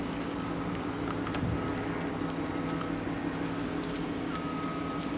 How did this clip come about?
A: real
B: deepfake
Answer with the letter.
A